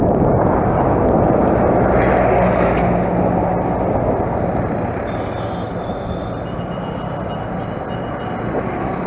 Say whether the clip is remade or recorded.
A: recorded